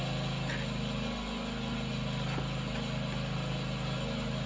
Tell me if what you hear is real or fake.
real